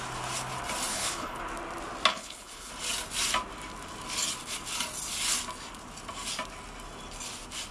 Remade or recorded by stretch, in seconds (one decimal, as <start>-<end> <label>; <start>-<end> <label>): 0.0-0.9 recorded; 0.9-1.4 remade; 1.4-2.1 recorded; 2.1-2.7 remade; 2.7-7.7 recorded